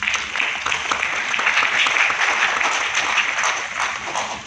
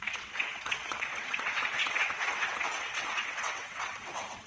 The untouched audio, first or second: first